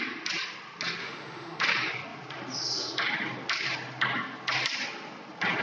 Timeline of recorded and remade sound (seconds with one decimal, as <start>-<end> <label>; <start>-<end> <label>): 0.0-1.0 recorded; 1.0-1.6 remade; 1.6-5.6 recorded